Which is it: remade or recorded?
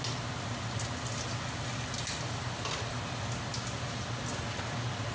recorded